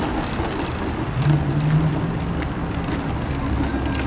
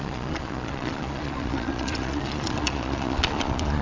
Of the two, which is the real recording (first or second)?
first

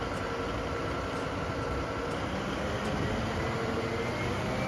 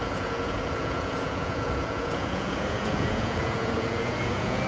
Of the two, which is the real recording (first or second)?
first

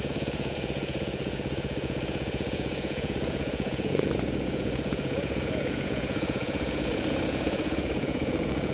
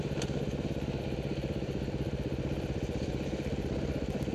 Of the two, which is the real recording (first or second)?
second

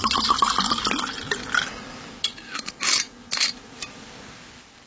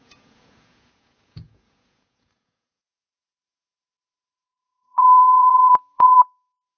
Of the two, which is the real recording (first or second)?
first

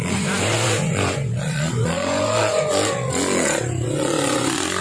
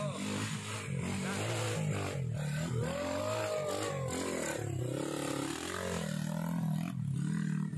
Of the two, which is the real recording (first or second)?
second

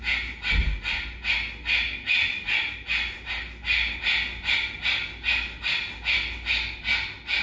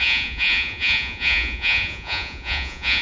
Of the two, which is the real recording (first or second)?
first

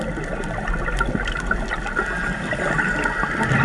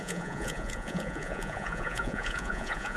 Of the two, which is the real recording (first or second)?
first